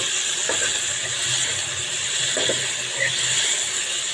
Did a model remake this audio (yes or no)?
no